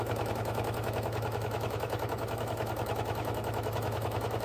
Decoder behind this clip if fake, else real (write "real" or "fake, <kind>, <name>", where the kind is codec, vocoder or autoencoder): fake, autoencoder, DAC-VAE